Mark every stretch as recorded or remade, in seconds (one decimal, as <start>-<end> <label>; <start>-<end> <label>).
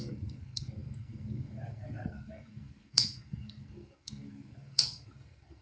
0.0-5.6 remade